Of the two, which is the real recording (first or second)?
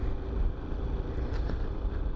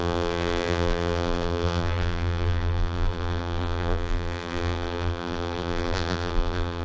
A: first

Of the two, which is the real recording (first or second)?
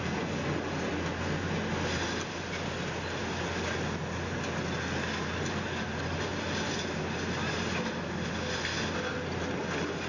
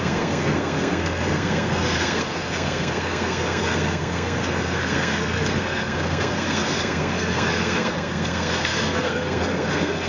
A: first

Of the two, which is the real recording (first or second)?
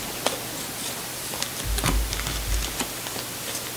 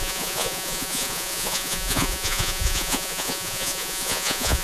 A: first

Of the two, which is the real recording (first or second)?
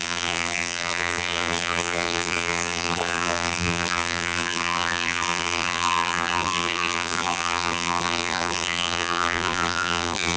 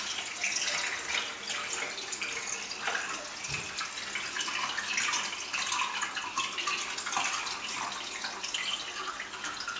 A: second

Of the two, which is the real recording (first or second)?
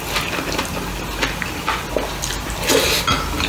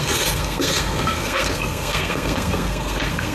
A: first